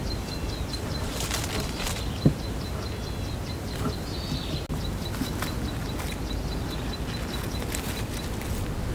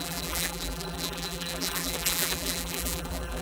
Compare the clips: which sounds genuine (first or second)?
first